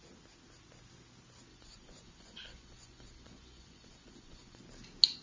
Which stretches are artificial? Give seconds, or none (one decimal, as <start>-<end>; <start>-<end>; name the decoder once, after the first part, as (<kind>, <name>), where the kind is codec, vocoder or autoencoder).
1.5-4.6 (vocoder, Vocos)